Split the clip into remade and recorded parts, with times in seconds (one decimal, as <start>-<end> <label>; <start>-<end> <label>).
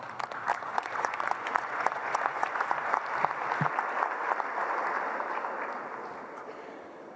0.0-0.5 recorded; 0.5-2.9 remade; 2.9-7.2 recorded